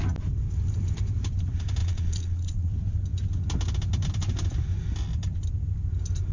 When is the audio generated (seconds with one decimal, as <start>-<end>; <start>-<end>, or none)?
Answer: 1.8-2.7